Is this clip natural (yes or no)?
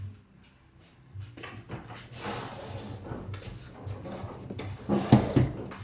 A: yes